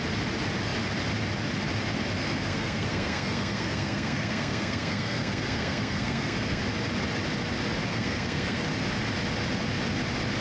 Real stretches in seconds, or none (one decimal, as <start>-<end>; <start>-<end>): 0.0-2.2; 6.6-7.9; 8.6-10.4